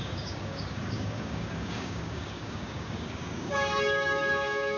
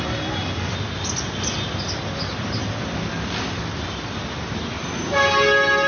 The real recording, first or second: second